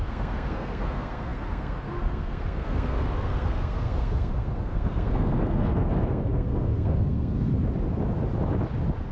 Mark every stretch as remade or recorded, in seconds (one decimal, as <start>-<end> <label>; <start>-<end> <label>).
0.0-7.5 remade; 7.5-9.1 recorded